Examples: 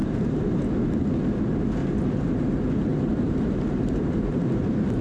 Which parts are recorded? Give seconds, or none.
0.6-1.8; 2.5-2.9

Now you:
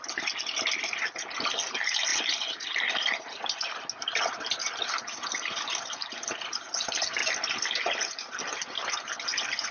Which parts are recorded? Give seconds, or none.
0.0-2.1; 3.2-4.6; 6.6-9.7